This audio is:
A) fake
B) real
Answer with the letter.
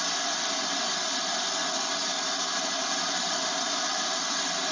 B